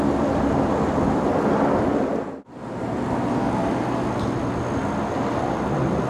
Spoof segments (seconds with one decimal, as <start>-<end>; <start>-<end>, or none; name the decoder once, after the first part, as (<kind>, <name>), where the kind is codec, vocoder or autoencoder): none